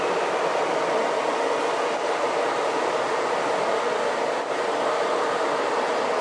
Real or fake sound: real